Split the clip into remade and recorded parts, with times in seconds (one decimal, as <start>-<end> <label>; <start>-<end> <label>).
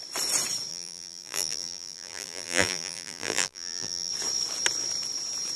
0.0-0.7 recorded; 0.7-4.1 remade; 4.1-5.6 recorded